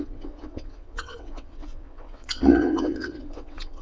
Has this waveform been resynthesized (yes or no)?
yes